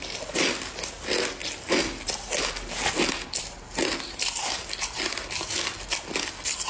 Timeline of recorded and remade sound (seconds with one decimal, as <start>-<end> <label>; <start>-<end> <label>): 0.0-6.7 recorded